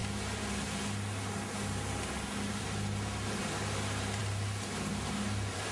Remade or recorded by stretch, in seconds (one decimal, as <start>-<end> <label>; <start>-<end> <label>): 0.0-5.7 recorded